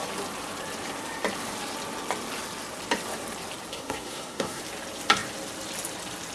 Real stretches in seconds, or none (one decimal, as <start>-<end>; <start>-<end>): 0.0-3.7; 4.6-6.3